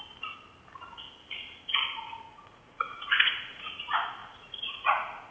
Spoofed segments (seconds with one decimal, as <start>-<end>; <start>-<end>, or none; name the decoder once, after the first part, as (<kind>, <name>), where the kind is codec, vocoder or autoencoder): 2.3-3.7 (vocoder, Vocos); 4.2-5.3